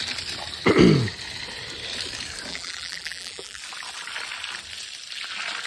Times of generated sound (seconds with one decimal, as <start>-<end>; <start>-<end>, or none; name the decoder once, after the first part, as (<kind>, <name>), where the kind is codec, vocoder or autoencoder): 2.5-3.6 (vocoder, BigVGAN v2)